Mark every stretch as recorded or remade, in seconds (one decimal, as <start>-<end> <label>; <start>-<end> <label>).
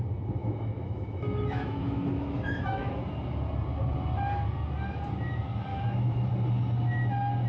0.0-0.4 recorded; 0.4-3.0 remade; 3.0-5.7 recorded; 5.7-6.3 remade; 6.3-7.5 recorded